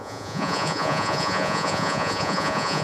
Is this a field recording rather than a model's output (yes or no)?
no